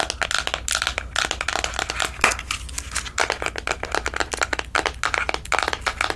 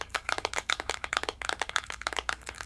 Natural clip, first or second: first